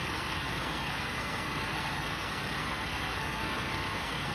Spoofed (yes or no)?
yes